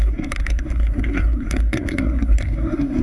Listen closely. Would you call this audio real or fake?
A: fake